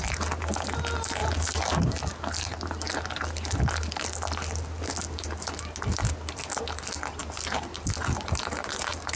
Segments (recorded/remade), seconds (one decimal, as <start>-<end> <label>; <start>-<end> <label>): 0.0-9.2 recorded